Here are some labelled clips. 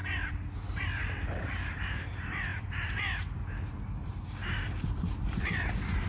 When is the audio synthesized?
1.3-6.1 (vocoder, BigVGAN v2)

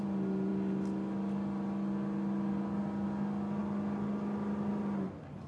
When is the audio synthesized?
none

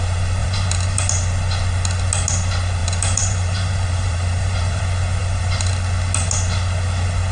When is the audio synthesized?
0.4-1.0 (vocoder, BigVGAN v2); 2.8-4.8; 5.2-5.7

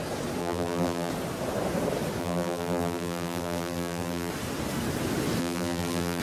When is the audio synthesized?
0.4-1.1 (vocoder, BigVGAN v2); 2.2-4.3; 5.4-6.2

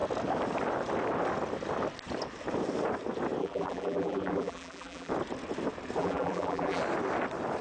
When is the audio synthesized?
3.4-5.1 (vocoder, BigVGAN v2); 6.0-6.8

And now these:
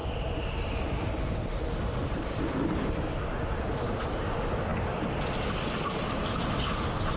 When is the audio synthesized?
0.0-4.3 (vocoder, BigVGAN v2)